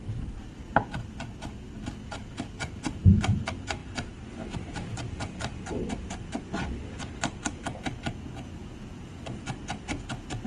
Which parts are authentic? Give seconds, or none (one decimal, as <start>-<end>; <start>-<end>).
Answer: 0.0-8.6; 9.2-10.5